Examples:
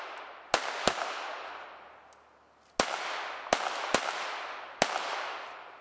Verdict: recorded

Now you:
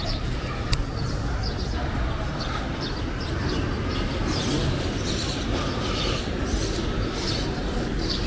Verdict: recorded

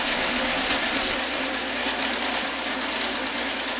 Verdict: recorded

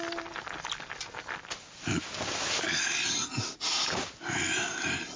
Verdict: recorded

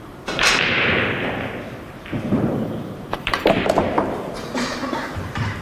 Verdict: remade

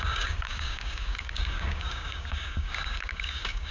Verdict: remade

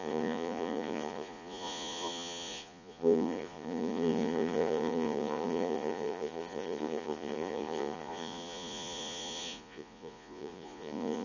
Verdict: remade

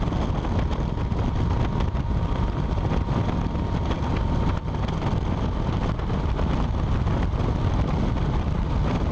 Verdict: recorded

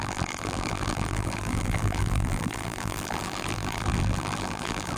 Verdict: remade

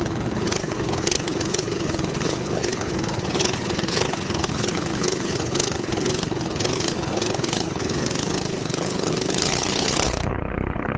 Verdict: remade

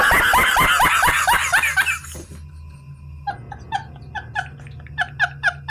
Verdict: recorded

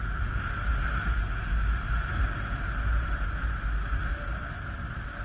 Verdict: recorded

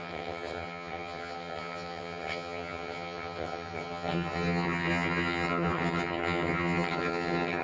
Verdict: remade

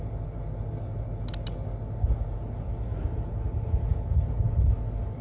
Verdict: recorded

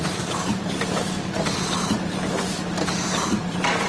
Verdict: remade